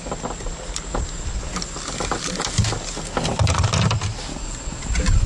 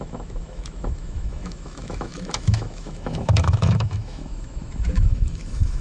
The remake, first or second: second